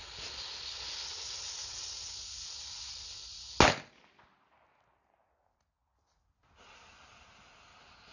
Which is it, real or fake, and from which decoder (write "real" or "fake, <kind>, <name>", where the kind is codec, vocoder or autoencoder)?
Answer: real